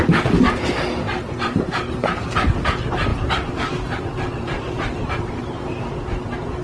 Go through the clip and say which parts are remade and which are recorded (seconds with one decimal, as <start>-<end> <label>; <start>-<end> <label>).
0.0-1.2 recorded; 1.2-2.1 remade; 2.1-3.1 recorded; 3.1-5.9 remade; 5.9-6.6 recorded